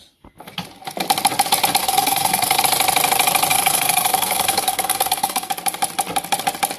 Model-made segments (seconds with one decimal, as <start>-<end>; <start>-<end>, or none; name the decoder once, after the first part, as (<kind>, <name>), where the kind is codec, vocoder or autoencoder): 1.8-2.6 (codec, SNAC); 3.5-5.5